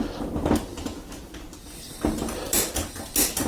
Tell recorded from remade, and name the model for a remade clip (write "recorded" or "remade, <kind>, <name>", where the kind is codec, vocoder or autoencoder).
recorded